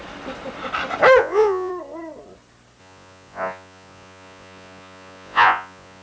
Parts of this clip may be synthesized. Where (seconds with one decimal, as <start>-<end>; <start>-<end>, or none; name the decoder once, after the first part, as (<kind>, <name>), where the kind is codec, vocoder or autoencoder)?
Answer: 1.2-1.7 (vocoder, Vocos); 2.8-6.0

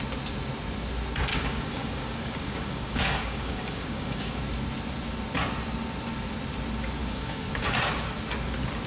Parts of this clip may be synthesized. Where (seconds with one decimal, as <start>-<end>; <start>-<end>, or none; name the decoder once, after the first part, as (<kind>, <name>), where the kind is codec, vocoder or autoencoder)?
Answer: 1.3-4.4 (codec, DAC); 7.0-7.5

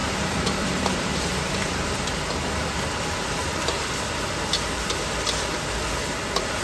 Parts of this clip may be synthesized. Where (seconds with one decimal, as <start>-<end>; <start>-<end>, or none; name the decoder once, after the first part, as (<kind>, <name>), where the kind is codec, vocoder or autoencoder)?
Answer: 0.0-2.2 (vocoder, BigVGAN v2)